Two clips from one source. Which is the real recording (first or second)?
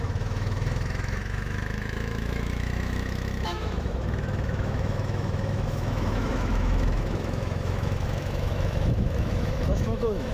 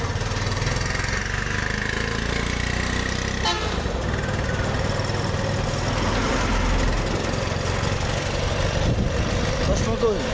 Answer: second